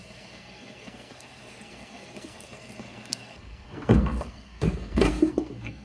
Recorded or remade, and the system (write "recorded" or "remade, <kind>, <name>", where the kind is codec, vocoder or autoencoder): remade, codec, SNAC